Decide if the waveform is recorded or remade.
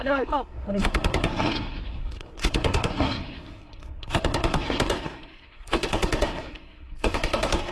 remade